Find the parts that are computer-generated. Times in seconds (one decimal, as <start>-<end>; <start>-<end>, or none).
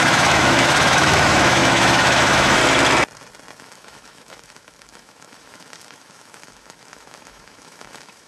0.0-2.6; 3.6-8.3